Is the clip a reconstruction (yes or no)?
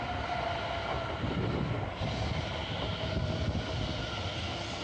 no